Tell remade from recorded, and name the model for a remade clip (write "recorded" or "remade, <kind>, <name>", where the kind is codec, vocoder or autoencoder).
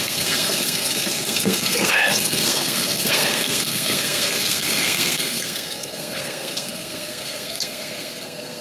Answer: remade, codec, SNAC